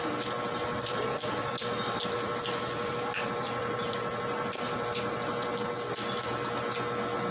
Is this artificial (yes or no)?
no